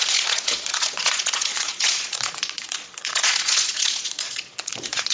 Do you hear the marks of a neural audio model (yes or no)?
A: yes